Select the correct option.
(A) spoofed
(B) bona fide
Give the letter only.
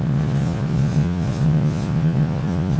A